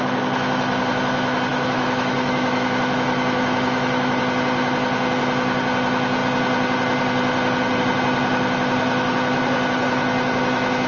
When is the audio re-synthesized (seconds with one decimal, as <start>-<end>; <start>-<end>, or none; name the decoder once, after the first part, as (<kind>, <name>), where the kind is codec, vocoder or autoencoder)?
1.5-4.2 (autoencoder, DAC-VAE)